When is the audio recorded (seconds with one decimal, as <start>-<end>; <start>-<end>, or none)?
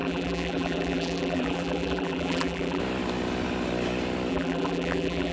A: 2.8-4.3